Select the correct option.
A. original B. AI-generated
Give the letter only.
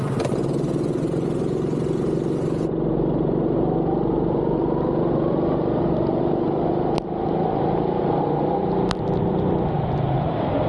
A